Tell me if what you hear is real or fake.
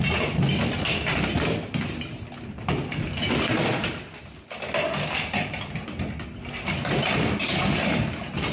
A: real